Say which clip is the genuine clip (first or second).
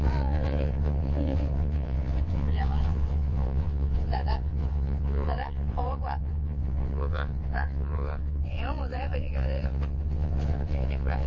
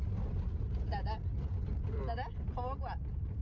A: second